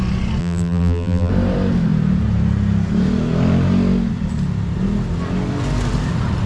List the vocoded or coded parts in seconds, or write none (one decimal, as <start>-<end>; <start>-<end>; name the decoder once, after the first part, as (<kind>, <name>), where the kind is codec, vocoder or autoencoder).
0.4-1.3 (vocoder, BigVGAN v2)

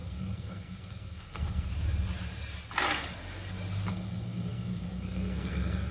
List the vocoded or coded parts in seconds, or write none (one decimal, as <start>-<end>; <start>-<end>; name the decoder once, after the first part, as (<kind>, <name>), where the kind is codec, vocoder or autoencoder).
0.0-1.7 (codec, SNAC); 3.9-5.9

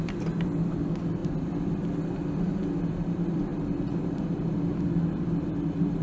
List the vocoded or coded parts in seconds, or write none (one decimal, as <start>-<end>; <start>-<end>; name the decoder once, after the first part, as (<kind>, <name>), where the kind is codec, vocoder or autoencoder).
none

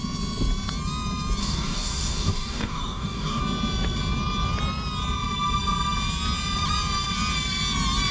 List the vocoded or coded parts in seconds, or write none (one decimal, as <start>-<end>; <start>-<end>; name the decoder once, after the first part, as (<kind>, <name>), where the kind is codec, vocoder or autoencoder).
1.4-3.4 (codec, DAC)

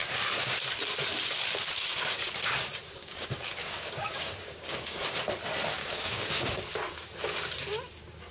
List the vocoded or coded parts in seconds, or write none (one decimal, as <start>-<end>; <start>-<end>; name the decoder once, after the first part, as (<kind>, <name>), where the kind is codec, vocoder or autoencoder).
3.0-5.0 (codec, DAC); 5.8-6.6

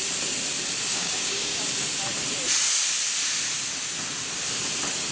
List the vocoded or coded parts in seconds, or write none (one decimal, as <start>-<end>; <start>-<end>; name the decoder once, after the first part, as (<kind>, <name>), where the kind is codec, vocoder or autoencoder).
0.9-1.7 (codec, DAC)